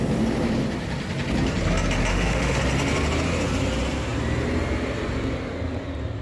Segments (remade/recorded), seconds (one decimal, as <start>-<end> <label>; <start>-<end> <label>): 0.0-2.1 recorded; 2.1-2.6 remade; 2.6-6.2 recorded